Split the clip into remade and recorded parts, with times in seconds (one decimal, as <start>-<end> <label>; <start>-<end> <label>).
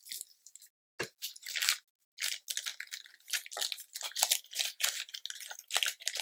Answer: 0.0-6.2 recorded